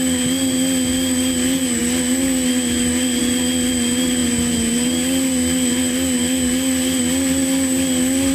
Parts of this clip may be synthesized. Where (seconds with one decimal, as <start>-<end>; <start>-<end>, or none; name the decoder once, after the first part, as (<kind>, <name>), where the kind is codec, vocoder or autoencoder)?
none